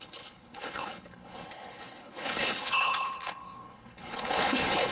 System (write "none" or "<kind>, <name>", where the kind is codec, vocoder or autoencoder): codec, HILCodec